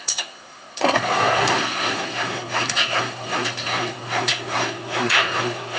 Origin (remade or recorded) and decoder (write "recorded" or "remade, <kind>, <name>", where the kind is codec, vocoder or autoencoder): remade, codec, SNAC